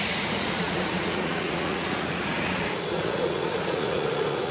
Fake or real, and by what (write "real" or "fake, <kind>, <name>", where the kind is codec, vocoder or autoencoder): fake, vocoder, Vocos